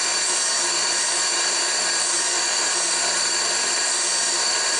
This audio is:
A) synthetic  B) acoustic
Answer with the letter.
B